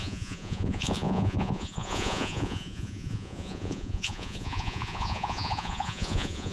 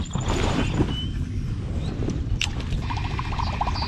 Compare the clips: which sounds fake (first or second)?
first